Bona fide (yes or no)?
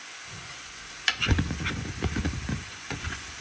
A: no